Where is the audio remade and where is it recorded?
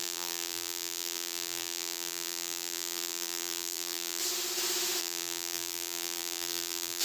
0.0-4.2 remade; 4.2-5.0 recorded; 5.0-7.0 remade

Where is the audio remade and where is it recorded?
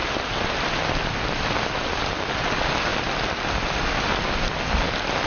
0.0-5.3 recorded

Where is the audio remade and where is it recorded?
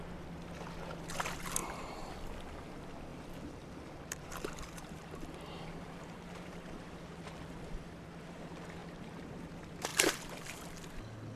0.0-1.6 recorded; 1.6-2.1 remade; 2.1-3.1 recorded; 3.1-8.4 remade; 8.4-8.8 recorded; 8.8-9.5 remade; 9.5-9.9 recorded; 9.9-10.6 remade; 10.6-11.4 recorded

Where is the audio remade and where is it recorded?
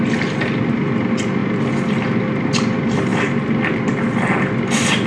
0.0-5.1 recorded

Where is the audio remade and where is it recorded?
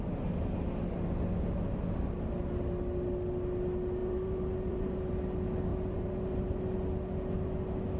0.0-4.0 recorded; 4.0-5.1 remade; 5.1-5.7 recorded; 5.7-6.6 remade; 6.6-8.0 recorded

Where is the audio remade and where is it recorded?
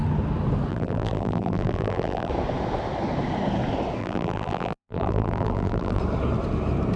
0.0-0.7 recorded; 0.7-2.3 remade; 2.3-4.0 recorded; 4.0-6.0 remade; 6.0-7.0 recorded